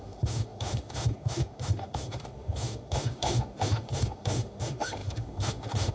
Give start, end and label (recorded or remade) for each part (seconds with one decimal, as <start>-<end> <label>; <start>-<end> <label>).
0.0-5.9 remade